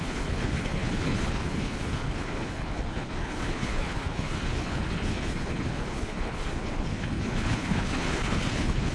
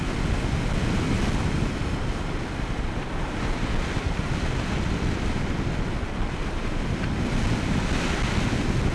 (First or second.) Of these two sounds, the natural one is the second